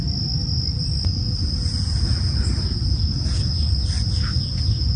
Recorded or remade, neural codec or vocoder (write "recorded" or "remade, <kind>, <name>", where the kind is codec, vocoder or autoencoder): recorded